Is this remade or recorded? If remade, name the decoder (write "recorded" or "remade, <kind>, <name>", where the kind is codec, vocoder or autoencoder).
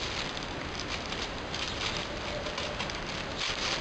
recorded